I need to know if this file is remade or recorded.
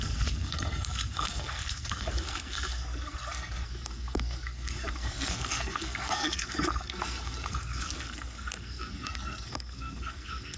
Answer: remade